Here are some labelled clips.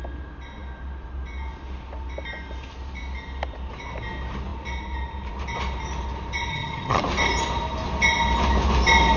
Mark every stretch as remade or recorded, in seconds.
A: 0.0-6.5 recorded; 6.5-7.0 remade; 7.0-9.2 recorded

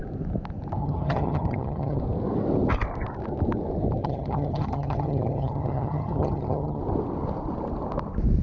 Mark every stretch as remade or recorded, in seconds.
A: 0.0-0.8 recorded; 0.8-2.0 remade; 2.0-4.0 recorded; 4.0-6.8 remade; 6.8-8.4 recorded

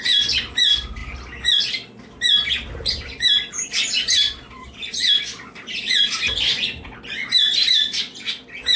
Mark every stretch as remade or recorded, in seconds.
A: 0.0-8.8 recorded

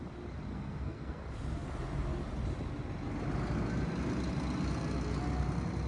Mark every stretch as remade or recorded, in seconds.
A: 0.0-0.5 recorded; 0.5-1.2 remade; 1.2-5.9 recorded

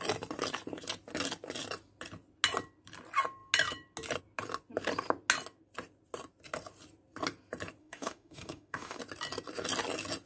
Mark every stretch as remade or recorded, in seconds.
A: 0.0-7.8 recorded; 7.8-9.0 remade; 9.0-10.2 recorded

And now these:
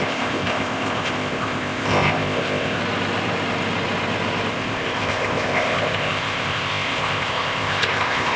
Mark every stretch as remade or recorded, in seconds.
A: 0.0-2.8 remade; 2.8-4.5 recorded; 4.5-8.4 remade